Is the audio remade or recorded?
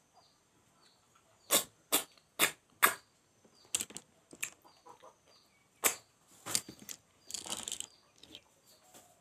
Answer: recorded